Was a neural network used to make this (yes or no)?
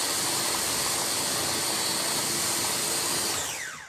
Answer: no